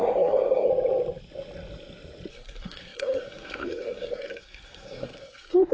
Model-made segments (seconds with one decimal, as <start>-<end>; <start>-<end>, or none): 0.0-0.7; 2.3-5.7